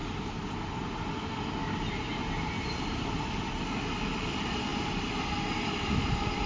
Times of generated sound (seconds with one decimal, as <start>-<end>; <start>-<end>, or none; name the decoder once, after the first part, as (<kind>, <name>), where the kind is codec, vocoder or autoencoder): 0.0-0.5 (vocoder, BigVGAN v2)